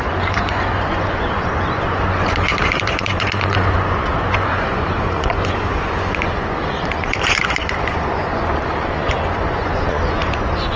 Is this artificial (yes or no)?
yes